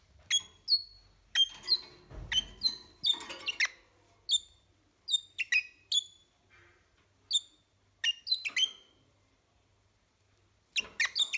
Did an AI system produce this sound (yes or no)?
no